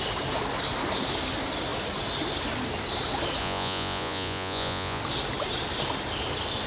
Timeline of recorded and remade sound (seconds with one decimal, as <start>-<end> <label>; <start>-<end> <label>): 0.0-3.4 recorded; 3.4-5.0 remade; 5.0-6.7 recorded